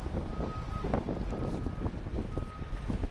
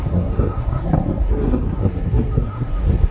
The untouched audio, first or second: first